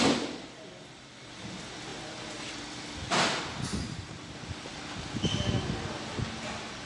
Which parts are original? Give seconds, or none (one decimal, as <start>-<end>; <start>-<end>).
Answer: 0.0-6.9